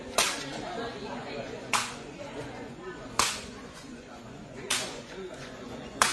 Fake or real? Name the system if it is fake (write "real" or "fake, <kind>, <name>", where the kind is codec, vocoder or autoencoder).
fake, vocoder, Vocos